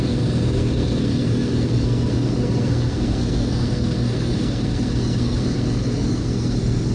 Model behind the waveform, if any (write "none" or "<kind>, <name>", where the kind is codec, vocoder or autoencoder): codec, SNAC